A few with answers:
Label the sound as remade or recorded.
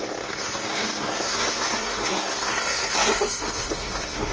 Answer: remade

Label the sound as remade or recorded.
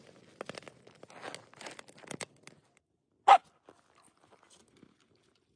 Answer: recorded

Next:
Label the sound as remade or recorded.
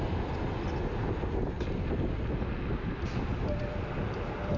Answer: recorded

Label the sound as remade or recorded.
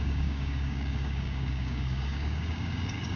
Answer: remade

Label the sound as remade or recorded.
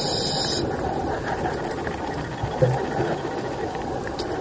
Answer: recorded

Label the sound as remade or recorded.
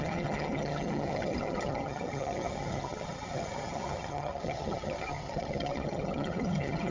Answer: remade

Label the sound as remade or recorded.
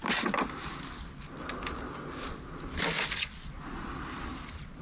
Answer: recorded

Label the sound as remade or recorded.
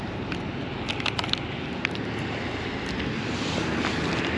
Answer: recorded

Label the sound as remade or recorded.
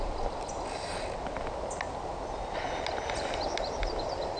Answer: recorded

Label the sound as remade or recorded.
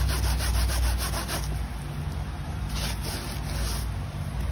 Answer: recorded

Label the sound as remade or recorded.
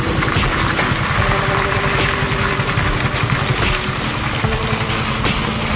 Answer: recorded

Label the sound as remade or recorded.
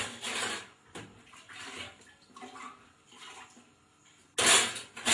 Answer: recorded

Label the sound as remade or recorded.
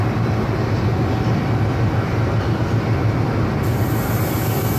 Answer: recorded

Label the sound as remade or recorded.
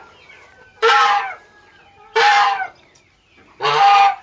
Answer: recorded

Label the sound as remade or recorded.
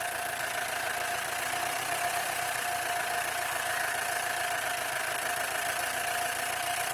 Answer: recorded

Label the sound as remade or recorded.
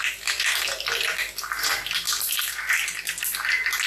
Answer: recorded